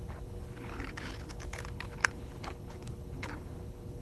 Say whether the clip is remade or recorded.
remade